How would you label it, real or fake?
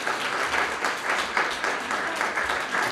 real